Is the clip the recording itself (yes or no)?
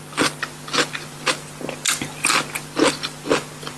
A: yes